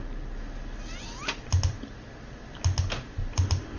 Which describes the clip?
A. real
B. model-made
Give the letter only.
A